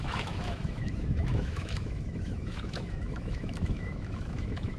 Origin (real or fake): fake